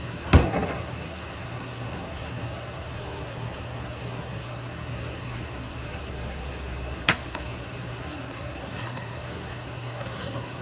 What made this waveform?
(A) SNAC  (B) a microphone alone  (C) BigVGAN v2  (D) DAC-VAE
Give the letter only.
A